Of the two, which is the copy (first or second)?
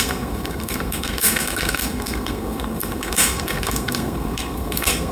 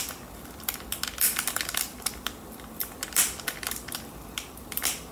first